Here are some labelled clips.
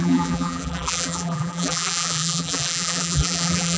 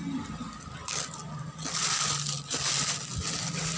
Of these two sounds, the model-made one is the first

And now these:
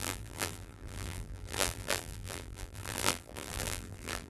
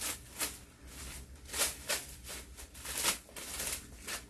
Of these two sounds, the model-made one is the first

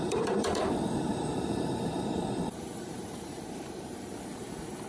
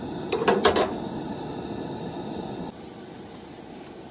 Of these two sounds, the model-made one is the first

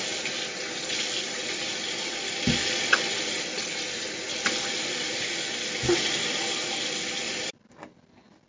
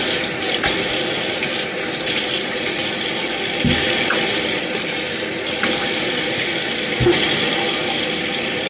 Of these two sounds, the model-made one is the second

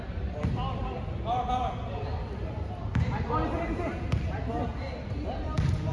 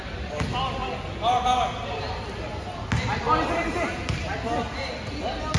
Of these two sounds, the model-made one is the first